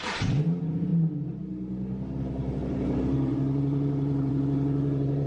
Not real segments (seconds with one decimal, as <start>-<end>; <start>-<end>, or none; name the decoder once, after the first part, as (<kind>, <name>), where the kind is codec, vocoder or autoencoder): 0.0-0.9 (vocoder, BigVGAN v2); 2.2-5.3